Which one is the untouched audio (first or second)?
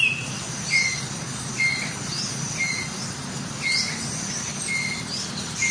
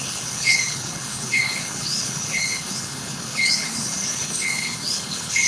first